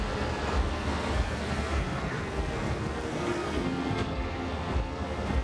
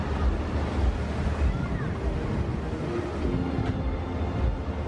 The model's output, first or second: first